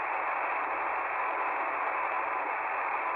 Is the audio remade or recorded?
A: recorded